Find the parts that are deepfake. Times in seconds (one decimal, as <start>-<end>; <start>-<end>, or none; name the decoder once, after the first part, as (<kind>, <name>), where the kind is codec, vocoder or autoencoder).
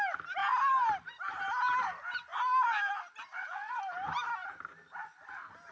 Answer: 3.3-3.8 (vocoder, WaveNeXt)